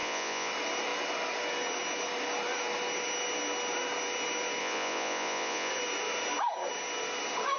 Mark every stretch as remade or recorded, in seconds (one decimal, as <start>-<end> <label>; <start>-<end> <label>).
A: 0.0-0.5 remade; 0.5-4.6 recorded; 4.6-5.7 remade; 5.7-7.6 recorded

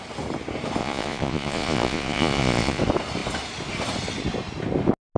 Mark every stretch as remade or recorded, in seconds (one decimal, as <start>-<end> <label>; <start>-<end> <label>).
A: 0.0-0.8 recorded; 0.8-2.8 remade; 2.8-5.2 recorded